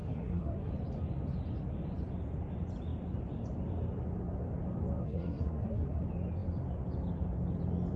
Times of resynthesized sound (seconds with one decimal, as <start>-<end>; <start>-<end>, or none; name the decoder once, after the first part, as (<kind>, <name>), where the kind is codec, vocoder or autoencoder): 0.0-0.7 (codec, SNAC); 5.0-6.0